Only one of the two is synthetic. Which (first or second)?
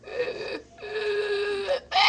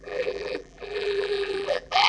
second